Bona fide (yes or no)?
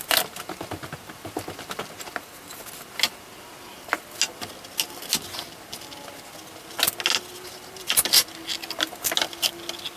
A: yes